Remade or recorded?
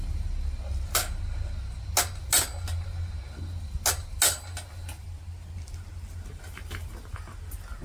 recorded